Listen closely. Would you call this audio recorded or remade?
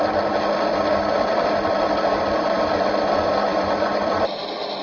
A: remade